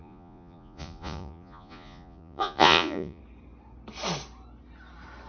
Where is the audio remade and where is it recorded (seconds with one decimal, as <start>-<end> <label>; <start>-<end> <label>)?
0.0-3.2 remade; 3.2-5.3 recorded